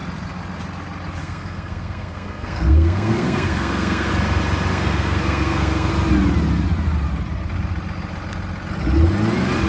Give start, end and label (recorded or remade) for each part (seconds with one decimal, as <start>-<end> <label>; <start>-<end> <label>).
0.0-1.2 recorded; 1.2-4.1 remade; 4.1-4.7 recorded; 4.7-5.9 remade; 5.9-9.7 recorded